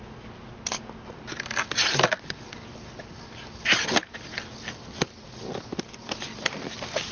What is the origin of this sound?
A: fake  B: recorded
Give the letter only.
B